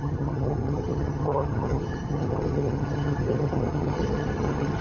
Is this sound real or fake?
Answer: fake